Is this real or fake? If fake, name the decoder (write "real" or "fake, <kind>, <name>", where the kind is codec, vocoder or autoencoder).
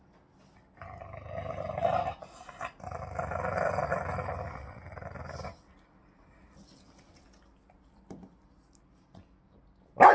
real